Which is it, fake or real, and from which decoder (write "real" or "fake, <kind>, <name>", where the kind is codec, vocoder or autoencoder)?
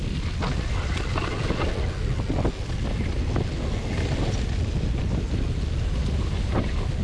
real